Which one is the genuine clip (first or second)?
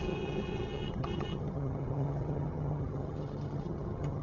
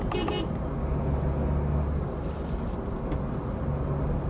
second